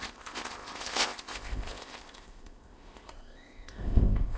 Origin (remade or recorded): remade